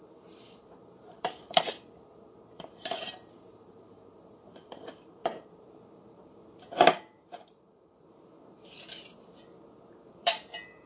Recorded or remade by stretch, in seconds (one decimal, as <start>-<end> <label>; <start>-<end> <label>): 0.0-8.8 remade; 8.8-9.9 recorded; 9.9-10.9 remade